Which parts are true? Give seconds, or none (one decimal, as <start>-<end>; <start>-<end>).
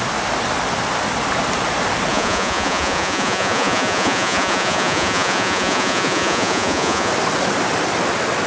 0.0-2.1; 7.1-8.5